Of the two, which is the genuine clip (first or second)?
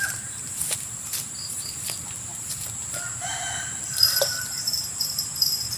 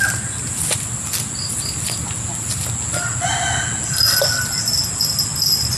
second